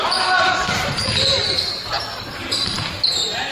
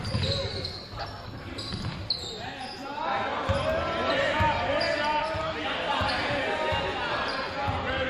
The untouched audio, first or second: second